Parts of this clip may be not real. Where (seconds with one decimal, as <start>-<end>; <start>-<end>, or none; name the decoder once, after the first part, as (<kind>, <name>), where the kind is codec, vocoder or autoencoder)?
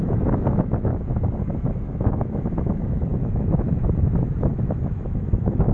0.0-0.9 (autoencoder, DAC-VAE); 1.4-5.7